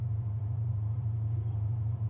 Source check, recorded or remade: remade